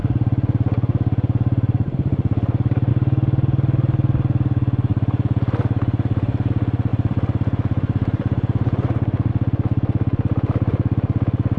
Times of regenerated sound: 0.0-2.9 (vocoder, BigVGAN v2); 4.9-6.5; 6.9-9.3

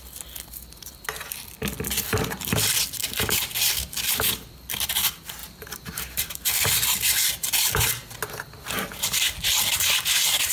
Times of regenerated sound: 5.4-7.9 (vocoder, BigVGAN v2)

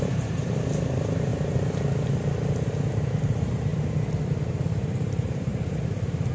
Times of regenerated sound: 0.0-1.3 (vocoder, BigVGAN v2); 3.2-3.7; 4.2-5.5

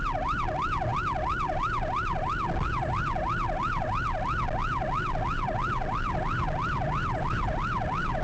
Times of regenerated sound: none

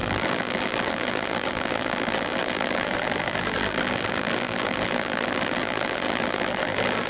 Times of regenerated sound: 0.0-7.1 (vocoder, BigVGAN v2)

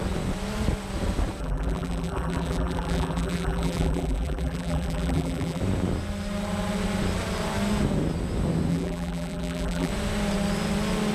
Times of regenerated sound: 1.4-5.6 (vocoder, BigVGAN v2); 8.7-9.9